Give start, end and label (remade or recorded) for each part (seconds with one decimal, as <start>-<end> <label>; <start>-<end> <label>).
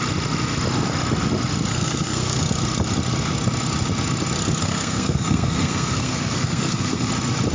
0.0-1.7 recorded; 1.7-2.4 remade; 2.4-4.6 recorded; 4.6-7.1 remade; 7.1-7.5 recorded